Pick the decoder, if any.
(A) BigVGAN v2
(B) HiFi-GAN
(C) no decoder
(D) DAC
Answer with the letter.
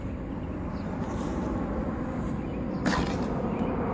C